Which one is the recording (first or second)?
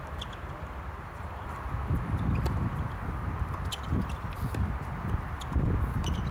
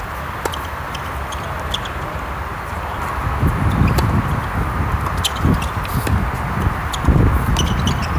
second